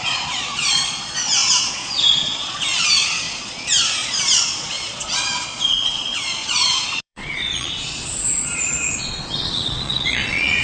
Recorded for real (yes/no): no